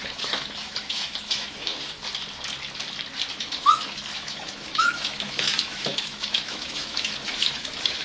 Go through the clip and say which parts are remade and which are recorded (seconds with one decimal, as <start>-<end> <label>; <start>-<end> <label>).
0.0-1.7 remade; 1.7-3.3 recorded; 3.3-8.0 remade